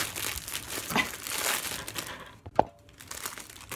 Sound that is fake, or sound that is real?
real